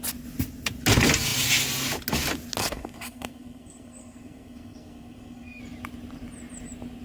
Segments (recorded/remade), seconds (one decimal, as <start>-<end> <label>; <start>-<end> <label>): 0.0-2.6 recorded; 2.6-5.6 remade; 5.6-7.0 recorded